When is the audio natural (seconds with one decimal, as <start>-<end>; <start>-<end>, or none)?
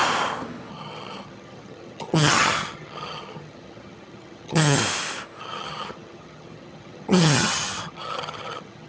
0.0-0.7; 4.8-5.4